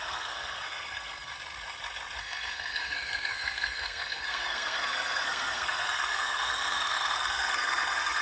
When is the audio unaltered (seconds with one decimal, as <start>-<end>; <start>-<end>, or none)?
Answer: 1.3-2.2